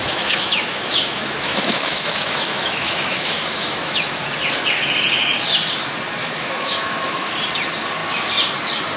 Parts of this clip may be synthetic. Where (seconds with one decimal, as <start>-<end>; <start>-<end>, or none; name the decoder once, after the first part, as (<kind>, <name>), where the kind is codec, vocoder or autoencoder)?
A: 0.0-4.1 (autoencoder, DAC-VAE); 6.2-7.3